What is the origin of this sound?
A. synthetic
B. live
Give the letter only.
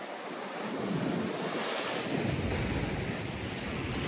B